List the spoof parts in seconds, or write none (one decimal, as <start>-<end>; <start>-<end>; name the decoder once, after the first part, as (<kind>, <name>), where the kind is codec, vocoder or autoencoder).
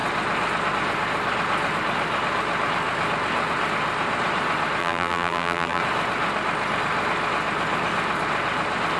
4.8-5.8 (vocoder, BigVGAN v2)